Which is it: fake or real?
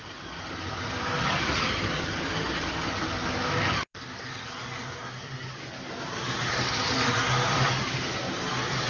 real